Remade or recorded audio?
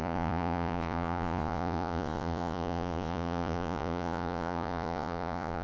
remade